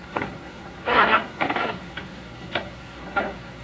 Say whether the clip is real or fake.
fake